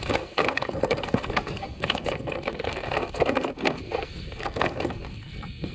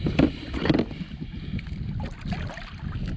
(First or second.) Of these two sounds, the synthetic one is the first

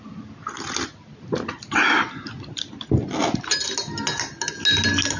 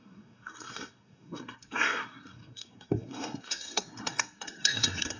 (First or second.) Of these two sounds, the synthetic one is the second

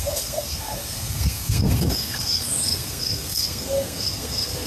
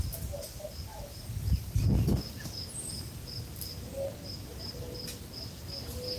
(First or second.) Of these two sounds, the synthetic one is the first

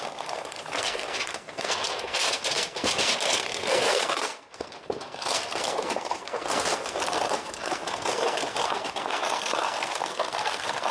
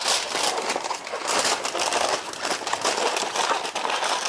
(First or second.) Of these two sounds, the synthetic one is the first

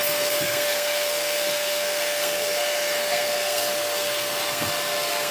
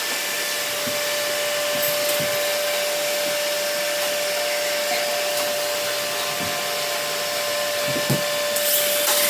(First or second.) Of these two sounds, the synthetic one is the first